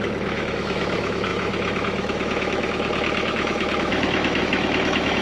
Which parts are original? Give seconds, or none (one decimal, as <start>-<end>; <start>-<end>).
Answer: none